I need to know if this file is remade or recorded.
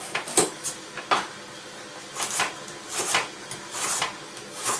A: recorded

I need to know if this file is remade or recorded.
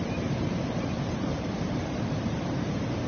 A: remade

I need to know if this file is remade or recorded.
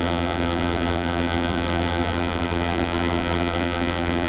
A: remade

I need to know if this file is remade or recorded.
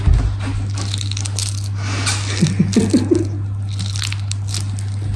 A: recorded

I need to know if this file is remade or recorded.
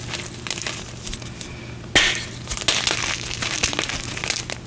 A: recorded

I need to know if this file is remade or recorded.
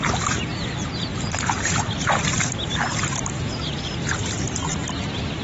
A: recorded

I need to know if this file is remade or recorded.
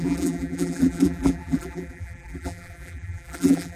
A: remade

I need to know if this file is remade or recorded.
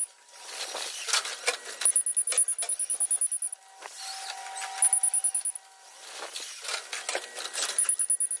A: recorded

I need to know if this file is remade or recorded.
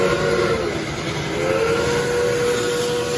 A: recorded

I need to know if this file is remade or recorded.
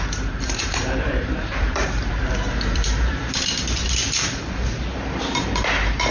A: remade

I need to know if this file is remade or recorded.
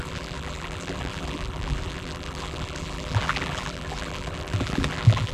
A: remade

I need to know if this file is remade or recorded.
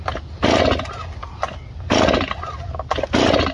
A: recorded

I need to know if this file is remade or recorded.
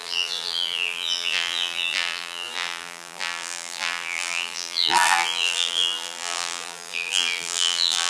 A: remade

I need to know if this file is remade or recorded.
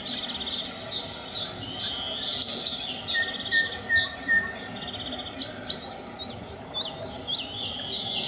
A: recorded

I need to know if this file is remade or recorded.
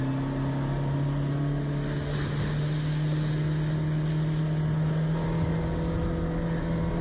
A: recorded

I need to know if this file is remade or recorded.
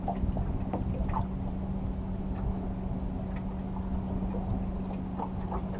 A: recorded